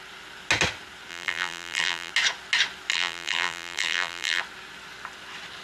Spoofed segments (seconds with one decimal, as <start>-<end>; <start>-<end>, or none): 1.1-2.1; 2.9-4.4